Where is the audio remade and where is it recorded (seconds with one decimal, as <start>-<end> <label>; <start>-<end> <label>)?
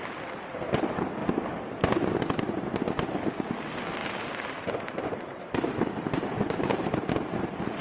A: 0.0-4.0 recorded; 4.0-6.7 remade; 6.7-7.8 recorded